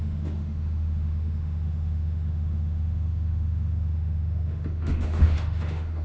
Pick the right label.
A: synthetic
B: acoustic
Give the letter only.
A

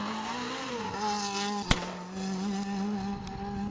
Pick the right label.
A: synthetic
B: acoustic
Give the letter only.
B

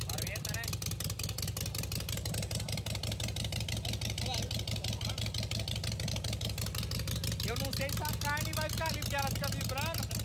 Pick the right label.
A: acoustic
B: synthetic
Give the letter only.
A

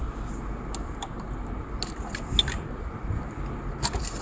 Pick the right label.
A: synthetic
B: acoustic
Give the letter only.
B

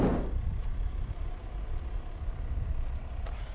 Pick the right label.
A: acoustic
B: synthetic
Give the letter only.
A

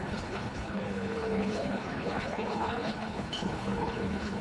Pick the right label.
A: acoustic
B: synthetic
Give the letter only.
B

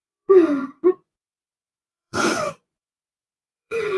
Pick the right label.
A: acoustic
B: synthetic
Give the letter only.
B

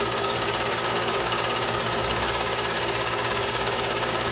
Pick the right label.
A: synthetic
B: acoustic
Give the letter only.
A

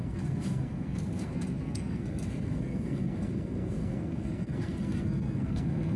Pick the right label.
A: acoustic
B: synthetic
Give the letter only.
B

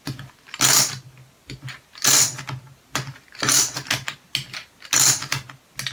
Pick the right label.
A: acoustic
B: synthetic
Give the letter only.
A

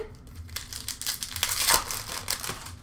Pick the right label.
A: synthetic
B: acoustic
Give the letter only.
B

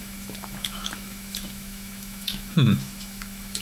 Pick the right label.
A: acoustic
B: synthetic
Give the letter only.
B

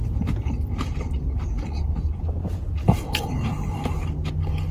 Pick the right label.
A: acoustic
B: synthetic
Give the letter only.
A